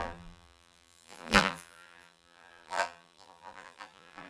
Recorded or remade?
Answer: remade